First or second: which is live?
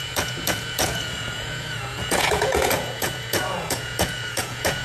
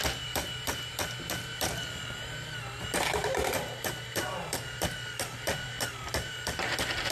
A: second